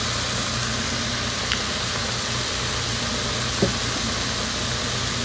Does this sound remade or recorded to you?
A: recorded